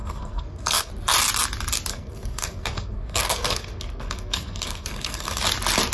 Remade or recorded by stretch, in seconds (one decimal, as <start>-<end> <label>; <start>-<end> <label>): 0.0-0.9 remade; 0.9-1.9 recorded; 1.9-5.4 remade; 5.4-5.9 recorded